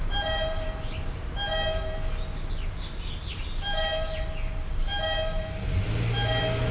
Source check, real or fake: real